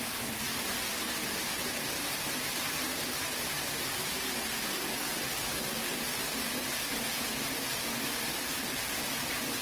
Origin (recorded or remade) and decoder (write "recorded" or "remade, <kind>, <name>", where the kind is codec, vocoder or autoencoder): recorded